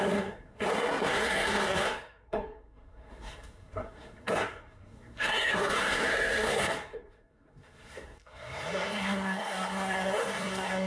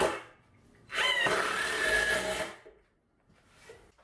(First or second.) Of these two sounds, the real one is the second